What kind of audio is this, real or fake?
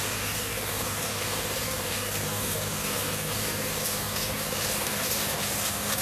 fake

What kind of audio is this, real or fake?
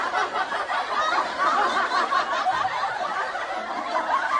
real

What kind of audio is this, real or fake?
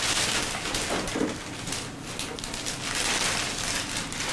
real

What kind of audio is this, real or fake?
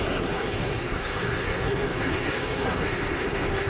fake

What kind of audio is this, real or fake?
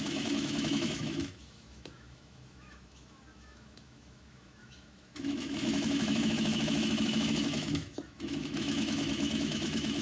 fake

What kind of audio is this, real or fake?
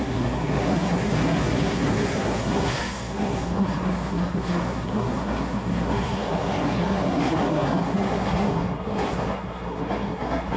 fake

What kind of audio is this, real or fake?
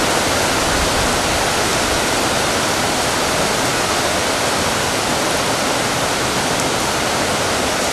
real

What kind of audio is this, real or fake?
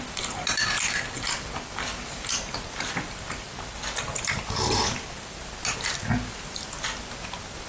real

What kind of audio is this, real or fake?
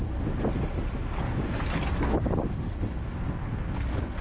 real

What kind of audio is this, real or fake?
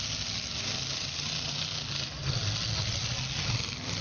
real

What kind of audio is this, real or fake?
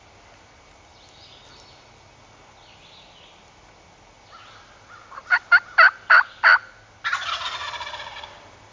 real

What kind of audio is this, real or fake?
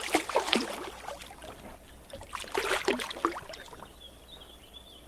real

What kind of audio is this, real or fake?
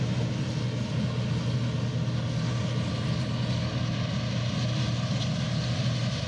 real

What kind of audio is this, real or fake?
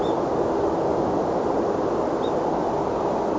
real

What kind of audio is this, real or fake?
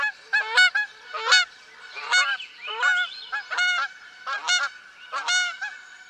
real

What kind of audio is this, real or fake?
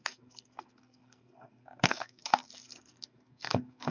fake